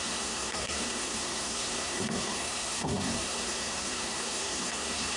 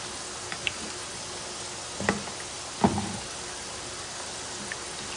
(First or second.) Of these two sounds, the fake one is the first